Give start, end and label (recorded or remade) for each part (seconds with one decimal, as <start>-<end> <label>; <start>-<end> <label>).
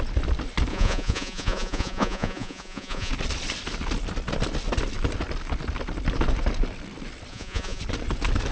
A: 0.0-0.7 recorded; 0.7-3.1 remade; 3.1-7.3 recorded; 7.3-7.8 remade; 7.8-8.5 recorded